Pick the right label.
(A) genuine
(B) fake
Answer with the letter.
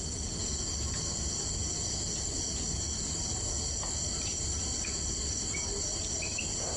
A